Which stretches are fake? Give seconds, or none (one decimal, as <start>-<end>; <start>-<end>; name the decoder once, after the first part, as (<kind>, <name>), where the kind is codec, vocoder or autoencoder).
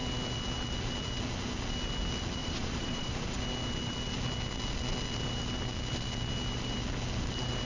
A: 2.4-3.4 (vocoder, Vocos)